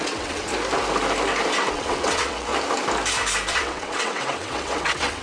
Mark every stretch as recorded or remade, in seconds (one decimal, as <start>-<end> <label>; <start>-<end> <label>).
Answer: 0.0-0.5 remade; 0.5-1.7 recorded; 1.7-2.5 remade; 2.5-3.5 recorded; 3.5-5.2 remade